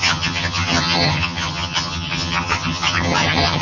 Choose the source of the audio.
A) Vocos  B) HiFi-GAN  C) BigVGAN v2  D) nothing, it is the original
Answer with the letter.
B